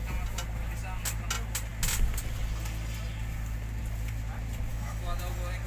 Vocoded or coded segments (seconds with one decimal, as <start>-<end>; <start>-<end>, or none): 4.7-5.2